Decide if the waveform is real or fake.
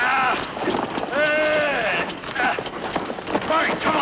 real